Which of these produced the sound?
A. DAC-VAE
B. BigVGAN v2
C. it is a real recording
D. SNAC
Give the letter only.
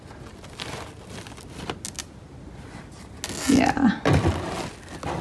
C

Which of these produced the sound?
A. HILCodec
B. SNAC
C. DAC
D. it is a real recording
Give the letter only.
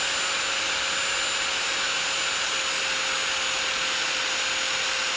D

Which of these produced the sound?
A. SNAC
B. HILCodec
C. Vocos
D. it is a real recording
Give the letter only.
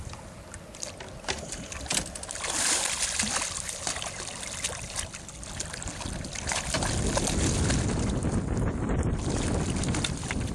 D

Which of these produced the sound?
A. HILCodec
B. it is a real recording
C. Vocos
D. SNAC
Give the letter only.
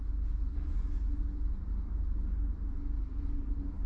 B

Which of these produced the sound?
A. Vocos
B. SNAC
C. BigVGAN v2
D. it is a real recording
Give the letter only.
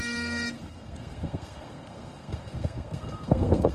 B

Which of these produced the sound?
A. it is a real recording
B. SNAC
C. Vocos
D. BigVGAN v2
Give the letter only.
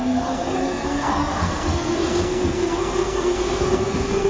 B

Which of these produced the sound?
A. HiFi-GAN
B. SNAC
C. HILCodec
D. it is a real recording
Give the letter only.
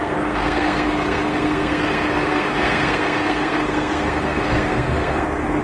B